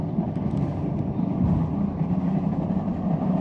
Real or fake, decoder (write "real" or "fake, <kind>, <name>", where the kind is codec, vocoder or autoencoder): real